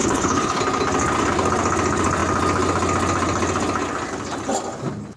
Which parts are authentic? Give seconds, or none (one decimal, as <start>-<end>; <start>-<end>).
0.6-5.2